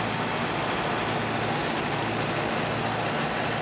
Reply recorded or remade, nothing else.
recorded